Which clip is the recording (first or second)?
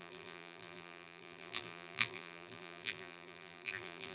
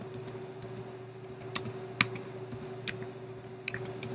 second